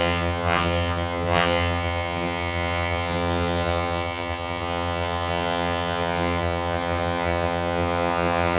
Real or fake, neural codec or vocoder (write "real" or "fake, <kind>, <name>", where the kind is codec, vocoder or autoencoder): fake, vocoder, HiFi-GAN